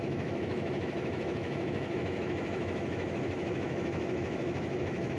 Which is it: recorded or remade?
remade